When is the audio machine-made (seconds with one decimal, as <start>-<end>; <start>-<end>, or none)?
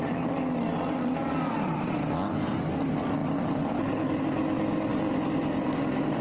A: 4.9-6.2